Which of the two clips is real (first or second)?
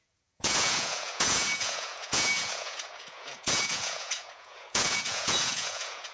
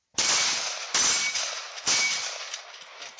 second